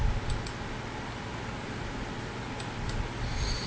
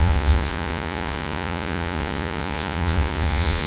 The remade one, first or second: second